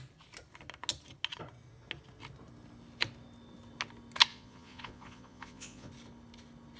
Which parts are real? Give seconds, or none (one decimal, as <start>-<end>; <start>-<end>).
0.0-4.3; 5.9-6.8

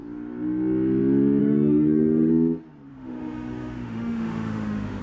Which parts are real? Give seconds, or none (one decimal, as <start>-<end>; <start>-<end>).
0.0-1.4; 2.3-2.9

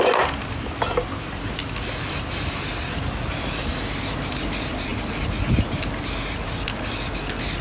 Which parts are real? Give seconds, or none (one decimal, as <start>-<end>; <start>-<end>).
0.0-7.6

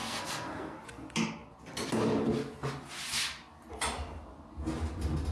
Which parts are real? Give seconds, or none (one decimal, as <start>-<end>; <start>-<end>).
0.8-5.3

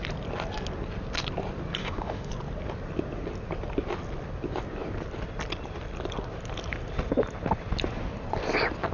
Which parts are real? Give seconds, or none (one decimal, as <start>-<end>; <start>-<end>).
0.0-1.8; 2.3-8.9

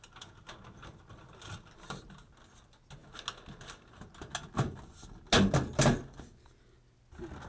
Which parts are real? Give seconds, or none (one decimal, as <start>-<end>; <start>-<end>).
0.0-7.5